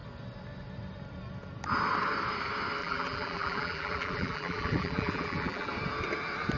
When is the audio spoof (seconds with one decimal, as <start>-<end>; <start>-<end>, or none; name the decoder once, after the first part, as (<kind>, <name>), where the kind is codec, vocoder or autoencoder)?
2.8-5.7 (vocoder, BigVGAN v2)